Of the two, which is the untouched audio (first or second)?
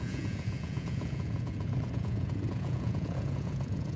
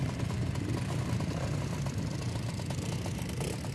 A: second